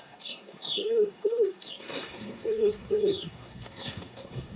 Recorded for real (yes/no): no